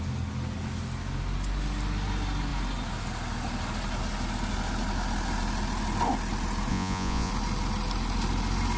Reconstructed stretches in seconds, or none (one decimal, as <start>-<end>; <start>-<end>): 6.7-7.3